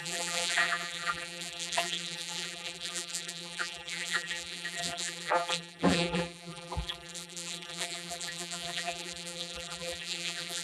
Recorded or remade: remade